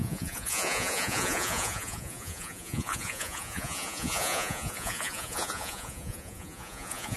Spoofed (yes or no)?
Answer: yes